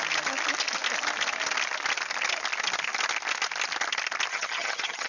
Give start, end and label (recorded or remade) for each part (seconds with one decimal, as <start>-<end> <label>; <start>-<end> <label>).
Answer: 0.0-4.3 recorded; 4.3-5.1 remade